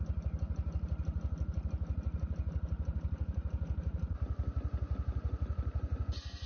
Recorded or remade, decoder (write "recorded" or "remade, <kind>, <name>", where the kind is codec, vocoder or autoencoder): recorded